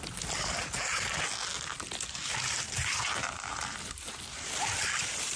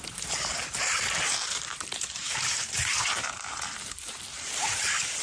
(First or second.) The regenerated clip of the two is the second